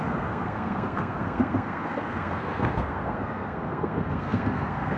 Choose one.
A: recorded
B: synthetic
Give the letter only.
B